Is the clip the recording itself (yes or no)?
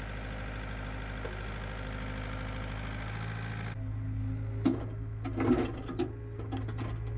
yes